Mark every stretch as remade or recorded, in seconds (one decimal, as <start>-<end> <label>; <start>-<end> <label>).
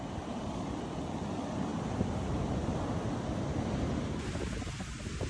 0.0-5.3 recorded